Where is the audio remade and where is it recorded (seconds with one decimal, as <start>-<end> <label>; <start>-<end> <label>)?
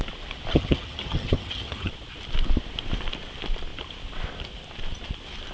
0.0-0.5 recorded; 0.5-1.9 remade; 1.9-5.5 recorded